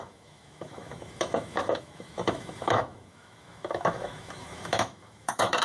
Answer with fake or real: fake